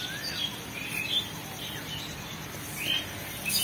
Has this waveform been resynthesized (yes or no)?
no